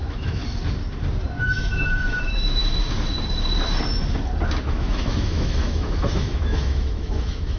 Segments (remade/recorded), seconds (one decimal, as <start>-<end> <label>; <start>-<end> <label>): 0.0-0.4 remade; 0.4-1.4 recorded; 1.4-2.6 remade; 2.6-4.7 recorded; 4.7-7.6 remade